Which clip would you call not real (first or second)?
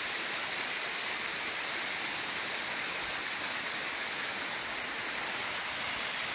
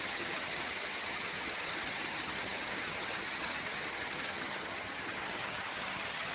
second